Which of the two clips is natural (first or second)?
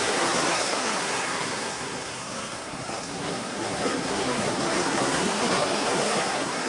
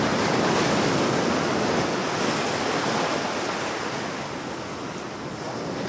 second